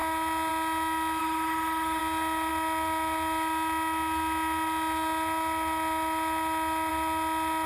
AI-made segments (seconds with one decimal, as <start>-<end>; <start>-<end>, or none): 1.2-2.0